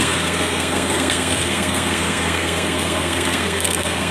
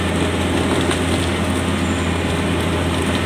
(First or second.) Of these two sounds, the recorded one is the second